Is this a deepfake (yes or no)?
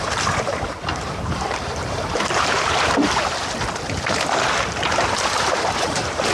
yes